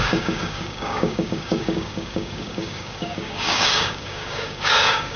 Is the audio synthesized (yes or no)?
yes